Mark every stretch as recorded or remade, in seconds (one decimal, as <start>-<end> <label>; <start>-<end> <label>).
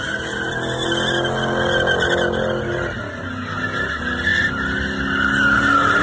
0.0-6.0 recorded